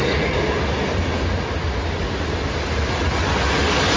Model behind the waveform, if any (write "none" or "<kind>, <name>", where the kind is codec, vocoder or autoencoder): none